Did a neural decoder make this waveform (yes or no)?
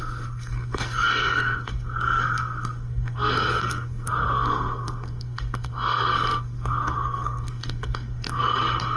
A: yes